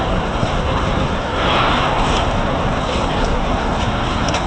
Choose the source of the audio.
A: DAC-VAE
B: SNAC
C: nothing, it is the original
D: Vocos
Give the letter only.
B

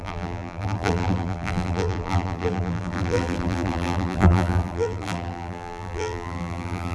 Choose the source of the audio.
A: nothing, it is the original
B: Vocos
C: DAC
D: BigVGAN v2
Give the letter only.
D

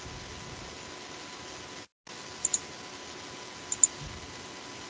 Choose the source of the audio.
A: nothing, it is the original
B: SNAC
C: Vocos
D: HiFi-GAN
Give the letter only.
A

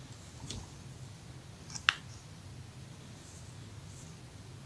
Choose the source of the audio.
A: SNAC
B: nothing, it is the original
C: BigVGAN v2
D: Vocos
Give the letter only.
B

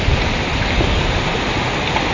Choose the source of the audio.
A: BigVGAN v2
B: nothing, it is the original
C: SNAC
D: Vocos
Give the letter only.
B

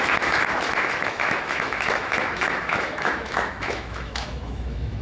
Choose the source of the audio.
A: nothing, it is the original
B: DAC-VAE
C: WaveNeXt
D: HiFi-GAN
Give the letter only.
B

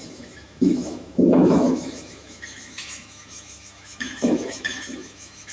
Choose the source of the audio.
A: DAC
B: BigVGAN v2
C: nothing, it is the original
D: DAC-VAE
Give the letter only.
D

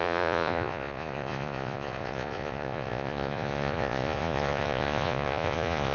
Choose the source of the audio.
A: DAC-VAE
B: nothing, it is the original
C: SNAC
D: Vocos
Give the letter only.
D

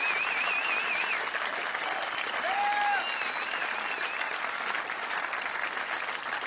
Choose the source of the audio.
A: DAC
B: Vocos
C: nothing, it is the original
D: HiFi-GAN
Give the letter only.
C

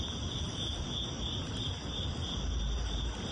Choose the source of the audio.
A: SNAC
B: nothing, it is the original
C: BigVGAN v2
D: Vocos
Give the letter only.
B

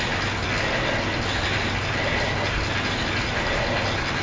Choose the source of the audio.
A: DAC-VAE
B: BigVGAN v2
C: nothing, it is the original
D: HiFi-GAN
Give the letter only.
C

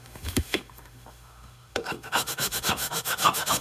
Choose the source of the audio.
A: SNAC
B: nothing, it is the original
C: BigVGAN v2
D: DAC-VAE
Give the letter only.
D